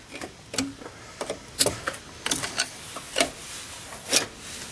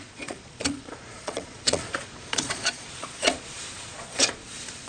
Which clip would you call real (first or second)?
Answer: first